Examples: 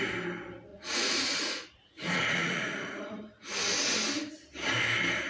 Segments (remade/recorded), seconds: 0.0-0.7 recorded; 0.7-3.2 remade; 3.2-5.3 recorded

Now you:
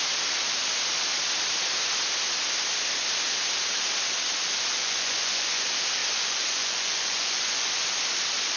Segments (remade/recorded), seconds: 0.0-4.8 recorded; 4.8-5.6 remade; 5.6-6.0 recorded; 6.0-8.0 remade; 8.0-8.6 recorded

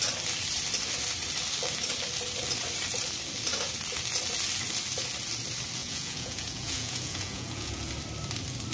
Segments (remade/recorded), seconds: 0.0-5.8 recorded; 5.8-7.9 remade; 7.9-8.7 recorded

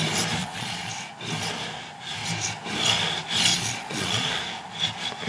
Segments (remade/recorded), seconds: 0.0-0.4 recorded; 0.4-0.9 remade; 0.9-3.5 recorded; 3.5-4.4 remade; 4.4-5.3 recorded

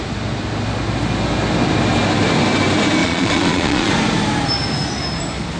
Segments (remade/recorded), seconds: 0.0-3.0 recorded; 3.0-3.9 remade; 3.9-5.6 recorded

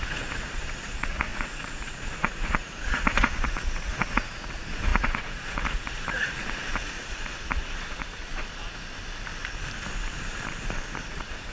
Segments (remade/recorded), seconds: 0.0-8.3 remade; 8.3-11.1 recorded; 11.1-11.5 remade